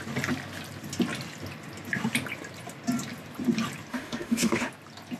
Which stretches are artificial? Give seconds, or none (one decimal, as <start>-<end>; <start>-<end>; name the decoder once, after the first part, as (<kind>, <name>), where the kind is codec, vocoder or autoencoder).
3.9-4.7 (autoencoder, DAC-VAE)